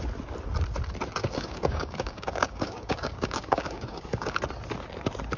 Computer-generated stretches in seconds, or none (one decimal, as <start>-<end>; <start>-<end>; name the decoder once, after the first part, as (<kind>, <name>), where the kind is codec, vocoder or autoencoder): 1.2-4.4 (codec, DAC)